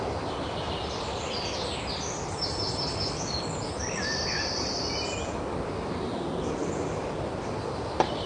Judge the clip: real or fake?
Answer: real